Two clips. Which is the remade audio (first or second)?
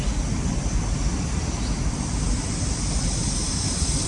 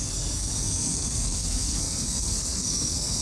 second